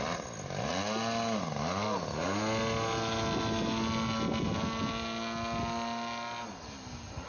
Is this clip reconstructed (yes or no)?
no